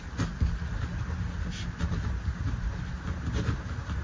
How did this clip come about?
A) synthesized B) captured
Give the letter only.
B